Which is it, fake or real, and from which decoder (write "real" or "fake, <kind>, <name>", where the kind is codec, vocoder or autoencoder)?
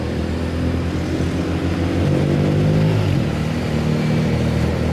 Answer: real